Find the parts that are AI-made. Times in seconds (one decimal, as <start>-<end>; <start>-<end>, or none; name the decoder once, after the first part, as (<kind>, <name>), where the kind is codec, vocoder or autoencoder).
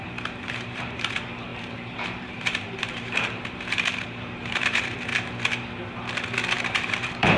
0.0-5.1 (vocoder, BigVGAN v2); 6.6-7.4